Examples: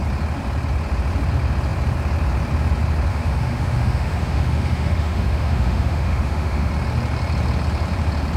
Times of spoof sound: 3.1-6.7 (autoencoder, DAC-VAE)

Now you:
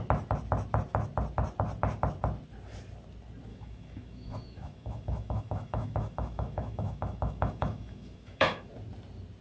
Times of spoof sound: 3.5-8.7 (autoencoder, DAC-VAE)

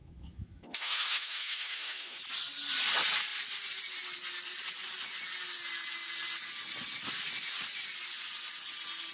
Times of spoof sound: 0.0-2.2 (autoencoder, DAC-VAE)

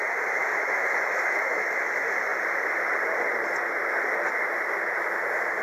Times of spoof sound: 0.4-1.7 (autoencoder, DAC-VAE)